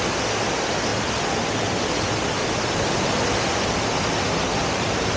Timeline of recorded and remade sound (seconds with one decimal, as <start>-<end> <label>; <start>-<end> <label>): 0.0-5.2 recorded